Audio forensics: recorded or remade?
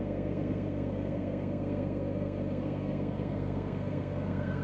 remade